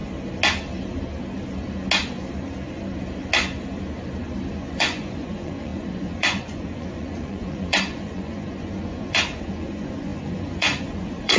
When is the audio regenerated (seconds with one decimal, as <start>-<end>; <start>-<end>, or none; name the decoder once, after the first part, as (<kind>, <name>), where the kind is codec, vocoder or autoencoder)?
4.5-11.4 (vocoder, Vocos)